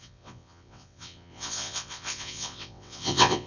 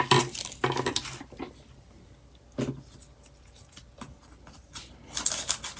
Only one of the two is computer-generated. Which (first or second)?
first